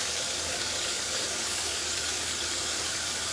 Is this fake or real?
fake